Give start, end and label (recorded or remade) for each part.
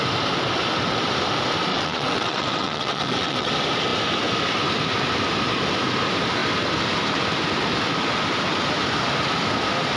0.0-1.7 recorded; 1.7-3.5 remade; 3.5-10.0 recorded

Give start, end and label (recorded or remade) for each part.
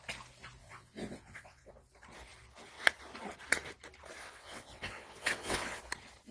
0.0-0.6 recorded; 0.6-1.7 remade; 1.7-4.2 recorded; 4.2-5.8 remade; 5.8-6.3 recorded